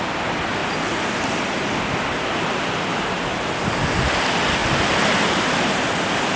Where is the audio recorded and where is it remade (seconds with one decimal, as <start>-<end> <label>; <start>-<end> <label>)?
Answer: 0.0-6.4 recorded